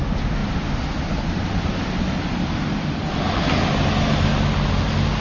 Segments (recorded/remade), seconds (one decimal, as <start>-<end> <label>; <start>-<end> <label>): 0.0-5.2 recorded